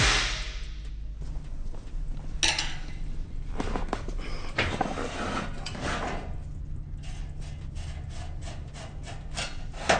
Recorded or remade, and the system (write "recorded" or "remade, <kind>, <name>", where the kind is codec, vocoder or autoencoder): recorded